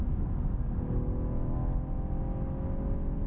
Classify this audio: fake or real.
real